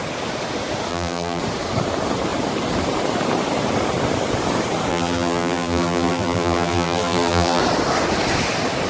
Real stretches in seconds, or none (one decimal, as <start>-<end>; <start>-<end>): 0.0-0.9; 1.4-4.9; 7.6-8.9

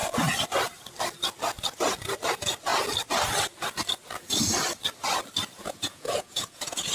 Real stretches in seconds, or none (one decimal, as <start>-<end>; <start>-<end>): 0.0-5.6

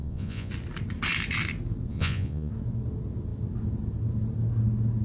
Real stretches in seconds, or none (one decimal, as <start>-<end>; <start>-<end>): 0.5-1.9; 2.5-5.0